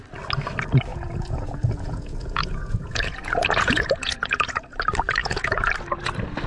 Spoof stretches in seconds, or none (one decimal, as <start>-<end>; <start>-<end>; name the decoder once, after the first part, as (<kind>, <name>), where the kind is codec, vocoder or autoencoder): 0.9-4.8 (vocoder, Vocos); 5.2-5.7